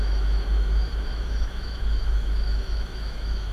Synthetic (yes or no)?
yes